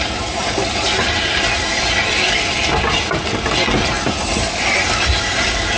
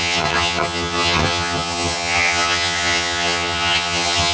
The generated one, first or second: second